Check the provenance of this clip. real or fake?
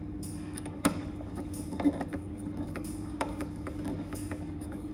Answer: fake